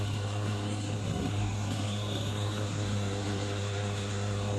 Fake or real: fake